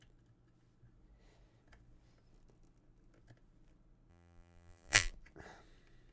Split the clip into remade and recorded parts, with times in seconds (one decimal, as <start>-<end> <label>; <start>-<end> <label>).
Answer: 0.0-4.1 recorded; 4.1-5.1 remade; 5.1-6.1 recorded